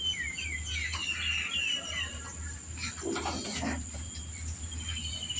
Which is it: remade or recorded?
recorded